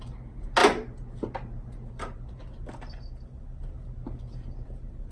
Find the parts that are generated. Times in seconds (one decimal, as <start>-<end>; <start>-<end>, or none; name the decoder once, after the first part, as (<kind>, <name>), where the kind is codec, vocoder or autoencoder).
none